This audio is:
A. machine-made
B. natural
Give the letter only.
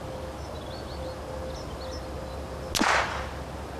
B